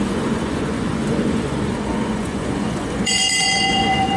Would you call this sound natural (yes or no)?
no